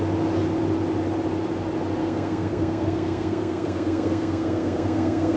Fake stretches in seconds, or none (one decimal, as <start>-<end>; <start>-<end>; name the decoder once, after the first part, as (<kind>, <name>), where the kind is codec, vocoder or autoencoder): 2.0-5.4 (codec, SNAC)